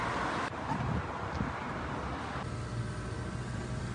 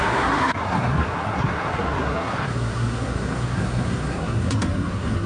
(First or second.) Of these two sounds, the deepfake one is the second